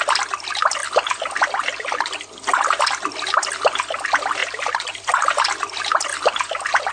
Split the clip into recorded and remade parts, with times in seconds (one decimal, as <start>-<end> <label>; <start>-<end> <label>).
0.0-4.4 recorded; 4.4-5.2 remade; 5.2-6.1 recorded; 6.1-6.9 remade